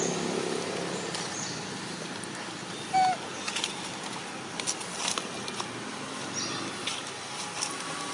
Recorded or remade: recorded